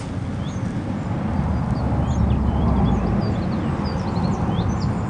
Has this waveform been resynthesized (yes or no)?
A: no